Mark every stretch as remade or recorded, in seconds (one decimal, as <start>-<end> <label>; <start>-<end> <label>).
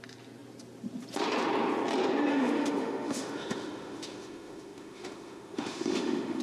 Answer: 0.0-2.3 recorded; 2.3-6.4 remade